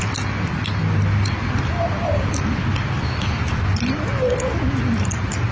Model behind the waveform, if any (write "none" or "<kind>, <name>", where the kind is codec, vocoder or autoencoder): none